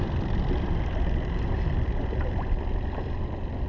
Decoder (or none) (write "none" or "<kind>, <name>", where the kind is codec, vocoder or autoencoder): none